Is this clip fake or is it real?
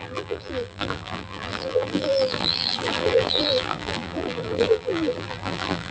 fake